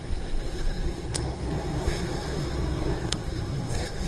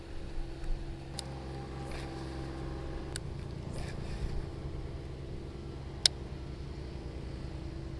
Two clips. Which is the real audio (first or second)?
second